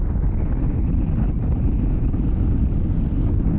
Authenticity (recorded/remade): recorded